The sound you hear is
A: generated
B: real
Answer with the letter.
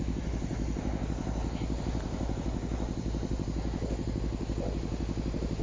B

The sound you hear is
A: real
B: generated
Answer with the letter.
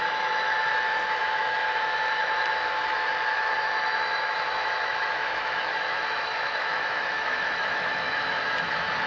B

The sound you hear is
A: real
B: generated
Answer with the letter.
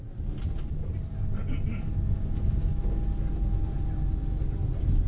A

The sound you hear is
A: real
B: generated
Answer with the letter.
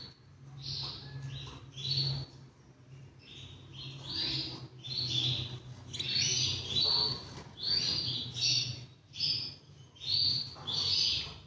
A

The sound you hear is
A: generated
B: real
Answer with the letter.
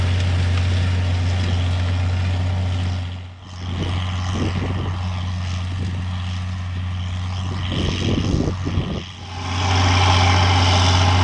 B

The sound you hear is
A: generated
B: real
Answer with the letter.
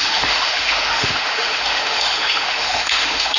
A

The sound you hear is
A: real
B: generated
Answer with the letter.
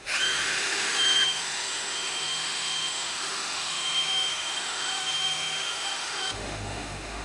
B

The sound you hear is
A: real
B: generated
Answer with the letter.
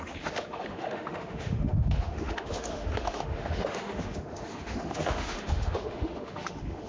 B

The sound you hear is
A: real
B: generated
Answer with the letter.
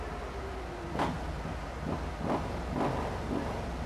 A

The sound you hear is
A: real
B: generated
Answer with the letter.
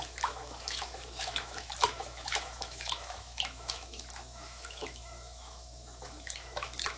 B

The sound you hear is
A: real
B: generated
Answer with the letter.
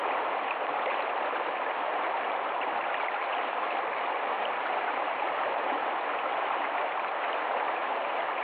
A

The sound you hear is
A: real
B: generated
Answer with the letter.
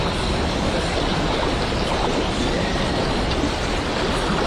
A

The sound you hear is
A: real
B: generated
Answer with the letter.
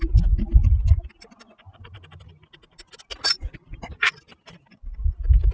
A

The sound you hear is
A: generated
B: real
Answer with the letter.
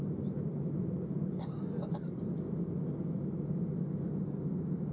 B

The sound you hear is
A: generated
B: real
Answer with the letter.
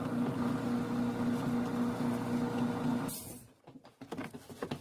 B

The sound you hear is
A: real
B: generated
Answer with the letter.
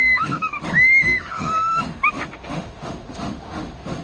B